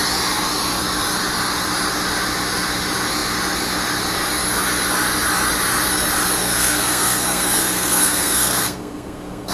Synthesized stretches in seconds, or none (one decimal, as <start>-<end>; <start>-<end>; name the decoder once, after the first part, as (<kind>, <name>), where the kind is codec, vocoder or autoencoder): 6.4-9.5 (codec, SNAC)